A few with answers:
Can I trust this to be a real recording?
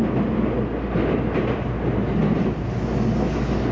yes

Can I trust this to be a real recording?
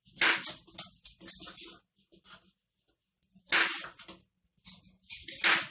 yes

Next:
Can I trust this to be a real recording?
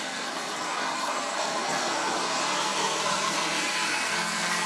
no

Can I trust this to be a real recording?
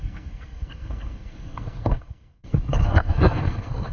no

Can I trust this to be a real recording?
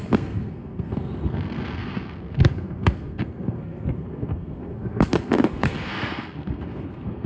no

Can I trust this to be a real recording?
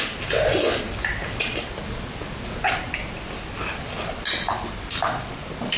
yes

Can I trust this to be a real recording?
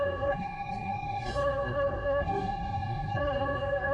no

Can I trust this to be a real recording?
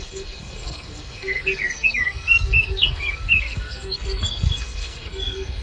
no